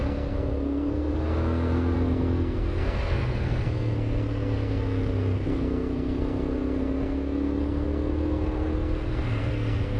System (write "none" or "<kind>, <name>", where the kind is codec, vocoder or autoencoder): codec, SNAC